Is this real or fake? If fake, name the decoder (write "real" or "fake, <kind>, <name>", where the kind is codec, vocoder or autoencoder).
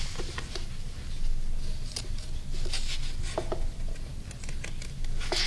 real